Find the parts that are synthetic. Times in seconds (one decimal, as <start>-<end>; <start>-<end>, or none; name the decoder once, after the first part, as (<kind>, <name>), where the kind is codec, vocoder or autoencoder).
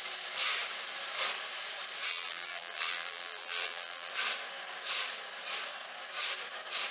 2.1-4.1 (vocoder, BigVGAN v2)